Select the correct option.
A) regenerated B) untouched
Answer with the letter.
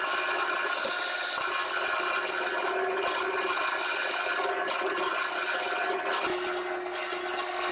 B